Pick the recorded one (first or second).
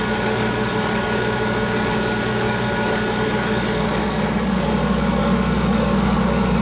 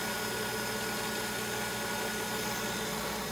second